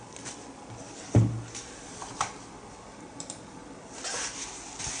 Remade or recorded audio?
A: recorded